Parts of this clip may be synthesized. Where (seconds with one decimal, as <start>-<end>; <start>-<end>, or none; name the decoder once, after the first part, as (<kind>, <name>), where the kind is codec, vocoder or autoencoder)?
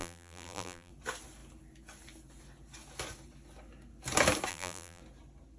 0.0-0.9 (vocoder, BigVGAN v2); 4.5-5.0